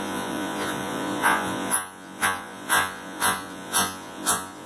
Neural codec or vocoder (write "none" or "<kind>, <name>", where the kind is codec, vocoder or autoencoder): vocoder, Vocos